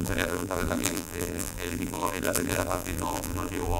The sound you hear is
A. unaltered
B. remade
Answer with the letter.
B